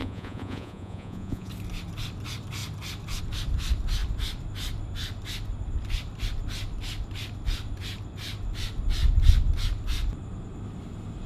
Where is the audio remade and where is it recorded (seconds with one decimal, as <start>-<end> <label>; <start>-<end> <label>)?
0.0-1.5 remade; 1.5-11.3 recorded